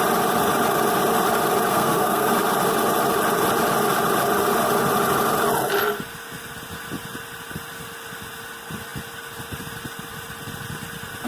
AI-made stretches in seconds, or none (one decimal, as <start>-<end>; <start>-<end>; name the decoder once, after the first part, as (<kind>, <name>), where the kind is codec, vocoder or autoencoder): 1.7-2.3 (codec, SNAC)